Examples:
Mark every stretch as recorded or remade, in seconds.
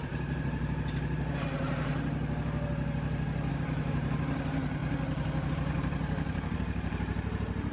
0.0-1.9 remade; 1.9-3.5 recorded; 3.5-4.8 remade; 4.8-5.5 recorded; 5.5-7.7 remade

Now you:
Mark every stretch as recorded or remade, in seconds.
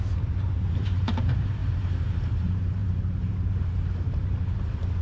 0.0-5.0 remade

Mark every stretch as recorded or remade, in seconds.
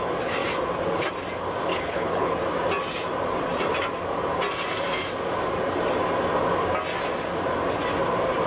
0.0-1.7 recorded; 1.7-2.3 remade; 2.3-8.5 recorded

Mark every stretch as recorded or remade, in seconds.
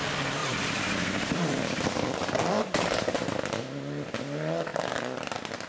0.0-0.4 recorded; 0.4-2.6 remade; 2.6-4.7 recorded; 4.7-5.7 remade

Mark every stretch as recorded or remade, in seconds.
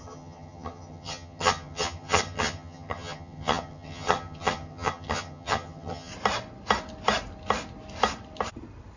0.0-6.1 remade; 6.1-9.0 recorded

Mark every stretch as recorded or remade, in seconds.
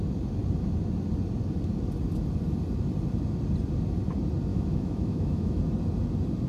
0.0-4.5 recorded; 4.5-5.6 remade; 5.6-6.5 recorded